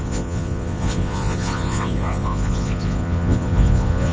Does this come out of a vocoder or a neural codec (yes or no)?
yes